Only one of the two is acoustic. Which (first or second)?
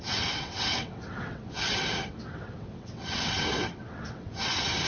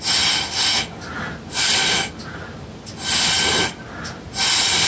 second